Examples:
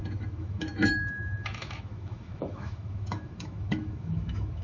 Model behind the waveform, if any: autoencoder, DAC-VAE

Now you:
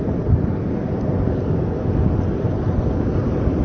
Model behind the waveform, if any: none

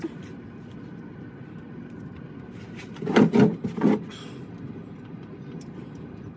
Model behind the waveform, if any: none